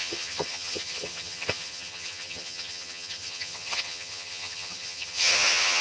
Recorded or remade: remade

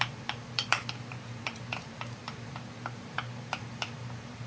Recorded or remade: remade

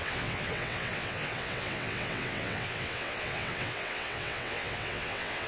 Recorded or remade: remade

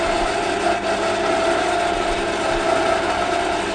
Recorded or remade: recorded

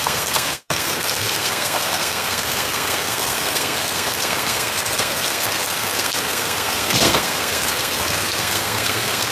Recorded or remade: remade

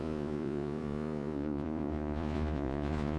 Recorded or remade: remade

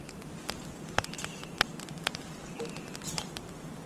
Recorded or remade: recorded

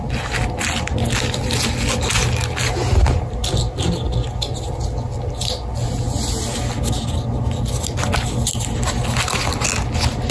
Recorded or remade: recorded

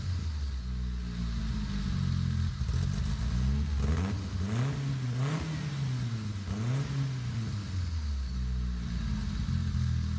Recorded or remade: recorded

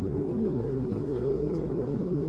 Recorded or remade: remade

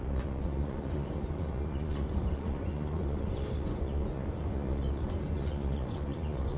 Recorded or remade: remade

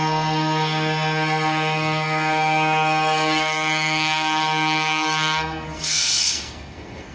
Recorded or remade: remade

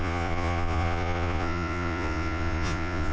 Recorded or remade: remade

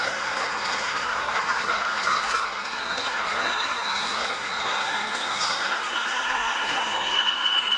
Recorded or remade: remade